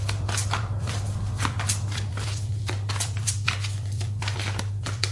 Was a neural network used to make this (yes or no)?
yes